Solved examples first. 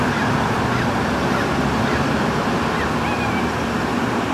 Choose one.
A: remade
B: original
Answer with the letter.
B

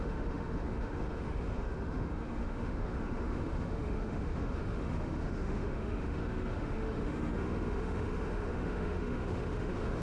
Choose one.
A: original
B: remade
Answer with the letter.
B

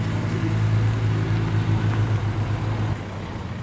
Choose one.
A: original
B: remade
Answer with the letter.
A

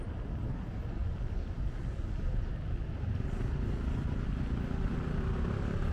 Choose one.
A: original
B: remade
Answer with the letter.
A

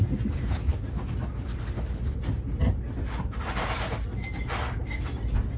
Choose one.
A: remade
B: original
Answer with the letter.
B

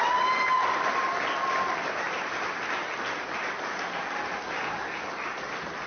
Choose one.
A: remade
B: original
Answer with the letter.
B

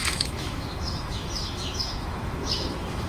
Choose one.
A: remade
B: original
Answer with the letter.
A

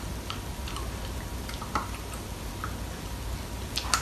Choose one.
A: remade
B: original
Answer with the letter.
B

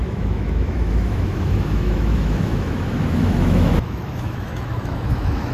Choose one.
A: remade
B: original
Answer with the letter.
A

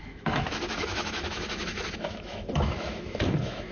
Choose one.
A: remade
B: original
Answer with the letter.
A